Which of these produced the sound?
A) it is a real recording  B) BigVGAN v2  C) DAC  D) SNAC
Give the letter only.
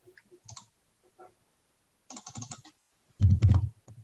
A